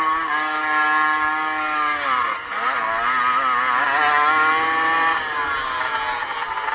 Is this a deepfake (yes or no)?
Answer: no